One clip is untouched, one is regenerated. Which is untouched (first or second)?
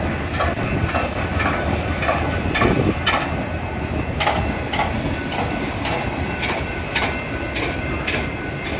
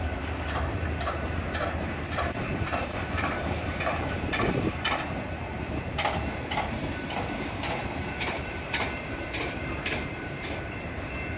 first